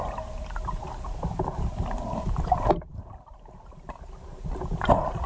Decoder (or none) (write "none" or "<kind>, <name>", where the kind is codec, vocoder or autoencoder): none